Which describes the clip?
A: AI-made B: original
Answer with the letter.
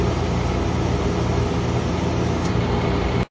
B